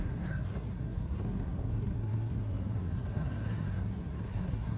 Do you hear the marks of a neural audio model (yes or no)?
yes